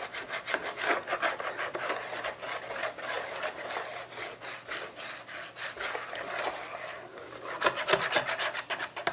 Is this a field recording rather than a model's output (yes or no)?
yes